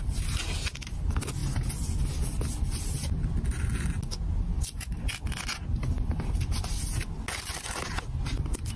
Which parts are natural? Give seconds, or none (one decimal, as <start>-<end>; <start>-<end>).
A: 0.0-8.8